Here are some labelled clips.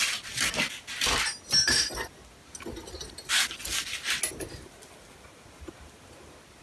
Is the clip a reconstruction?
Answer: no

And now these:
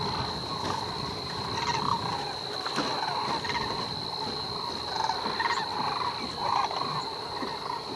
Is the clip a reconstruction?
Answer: no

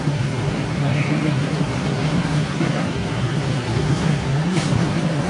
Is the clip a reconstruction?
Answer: yes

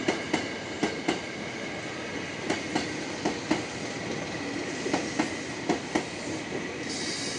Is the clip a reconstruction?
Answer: no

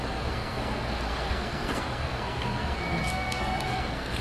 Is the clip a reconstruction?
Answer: yes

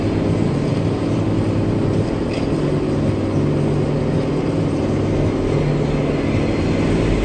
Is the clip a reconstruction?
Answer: no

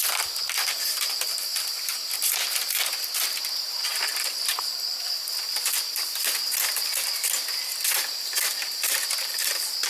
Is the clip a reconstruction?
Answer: no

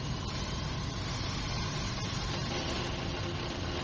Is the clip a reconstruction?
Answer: no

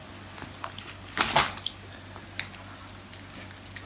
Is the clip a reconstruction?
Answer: no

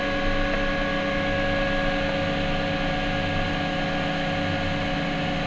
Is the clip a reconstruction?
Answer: no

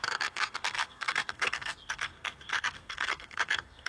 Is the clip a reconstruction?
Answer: yes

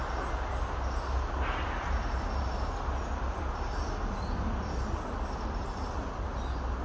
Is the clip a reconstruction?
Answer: no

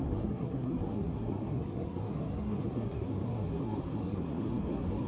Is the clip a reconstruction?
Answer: yes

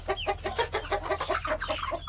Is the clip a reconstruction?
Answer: no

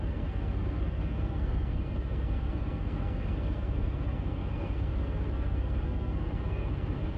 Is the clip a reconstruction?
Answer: yes